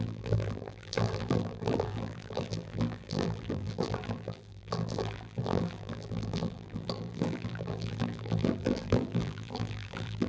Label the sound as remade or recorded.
remade